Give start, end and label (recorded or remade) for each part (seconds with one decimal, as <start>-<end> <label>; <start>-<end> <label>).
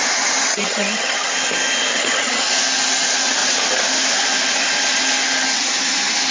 0.0-0.5 recorded; 0.5-1.3 remade; 1.3-1.9 recorded; 1.9-2.5 remade; 2.5-6.3 recorded